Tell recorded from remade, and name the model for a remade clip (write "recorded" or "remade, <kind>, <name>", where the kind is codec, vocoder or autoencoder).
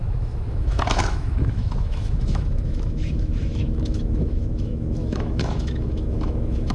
remade, autoencoder, DAC-VAE